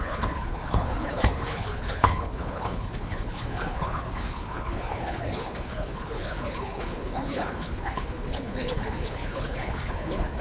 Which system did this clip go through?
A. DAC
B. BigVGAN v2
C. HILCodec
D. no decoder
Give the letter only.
C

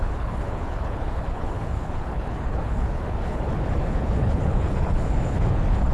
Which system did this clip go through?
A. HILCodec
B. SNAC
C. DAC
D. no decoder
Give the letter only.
A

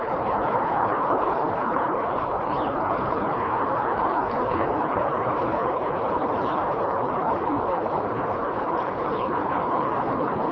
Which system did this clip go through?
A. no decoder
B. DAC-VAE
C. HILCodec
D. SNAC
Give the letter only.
C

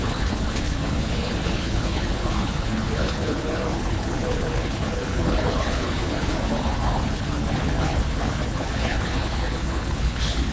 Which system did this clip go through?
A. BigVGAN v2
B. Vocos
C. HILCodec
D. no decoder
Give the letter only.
C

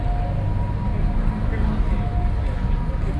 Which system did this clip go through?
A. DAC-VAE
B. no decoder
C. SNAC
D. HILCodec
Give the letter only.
B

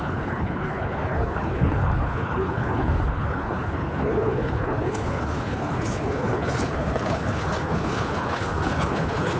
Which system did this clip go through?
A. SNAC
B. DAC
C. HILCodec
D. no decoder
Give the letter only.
C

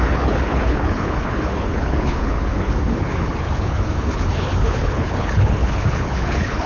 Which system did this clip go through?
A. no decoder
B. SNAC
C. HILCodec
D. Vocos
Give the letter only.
C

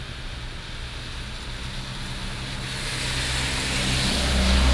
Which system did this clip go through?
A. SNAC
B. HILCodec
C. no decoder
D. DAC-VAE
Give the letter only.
C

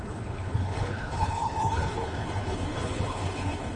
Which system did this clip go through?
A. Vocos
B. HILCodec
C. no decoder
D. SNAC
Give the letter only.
B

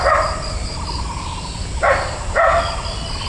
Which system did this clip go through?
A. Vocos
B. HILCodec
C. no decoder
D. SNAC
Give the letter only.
C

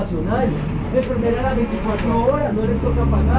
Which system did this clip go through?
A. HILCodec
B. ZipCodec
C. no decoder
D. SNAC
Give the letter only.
C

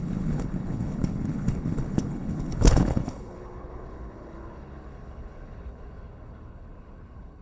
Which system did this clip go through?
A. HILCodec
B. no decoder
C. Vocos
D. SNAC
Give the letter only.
A